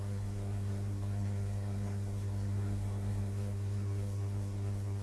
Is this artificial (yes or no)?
yes